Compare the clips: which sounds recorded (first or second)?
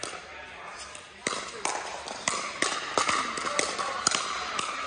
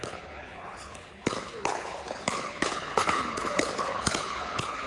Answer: first